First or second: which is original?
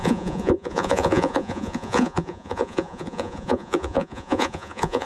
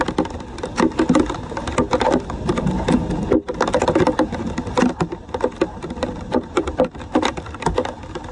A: second